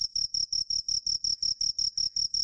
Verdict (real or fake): real